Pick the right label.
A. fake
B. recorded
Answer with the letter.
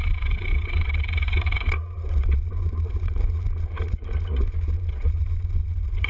A